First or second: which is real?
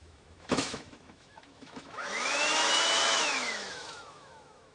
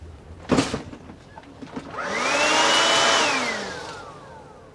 second